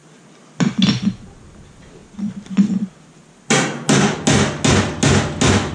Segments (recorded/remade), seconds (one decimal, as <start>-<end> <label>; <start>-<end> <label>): 0.0-5.7 recorded